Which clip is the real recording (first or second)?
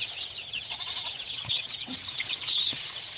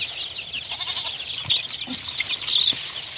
second